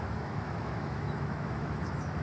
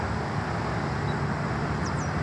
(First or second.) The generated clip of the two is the first